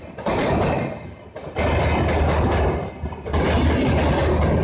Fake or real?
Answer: real